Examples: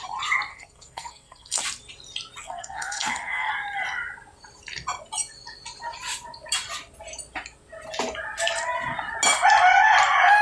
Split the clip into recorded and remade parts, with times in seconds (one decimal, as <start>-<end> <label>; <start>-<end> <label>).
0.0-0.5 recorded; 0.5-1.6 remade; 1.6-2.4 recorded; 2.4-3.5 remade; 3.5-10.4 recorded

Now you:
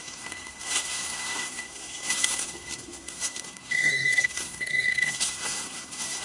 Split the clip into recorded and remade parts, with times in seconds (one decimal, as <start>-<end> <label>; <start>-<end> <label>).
0.0-6.2 remade

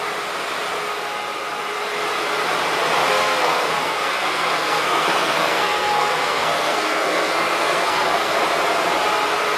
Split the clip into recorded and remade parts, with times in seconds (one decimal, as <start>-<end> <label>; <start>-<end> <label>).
0.0-3.1 recorded; 3.1-8.4 remade; 8.4-9.6 recorded

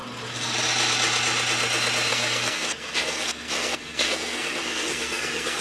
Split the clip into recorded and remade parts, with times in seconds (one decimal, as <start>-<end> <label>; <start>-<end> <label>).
0.0-2.1 recorded; 2.1-5.6 remade